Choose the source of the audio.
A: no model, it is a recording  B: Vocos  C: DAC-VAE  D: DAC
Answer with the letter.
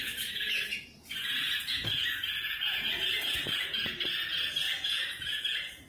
B